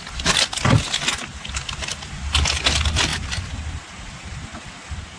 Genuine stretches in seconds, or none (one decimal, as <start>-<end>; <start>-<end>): 0.0-5.2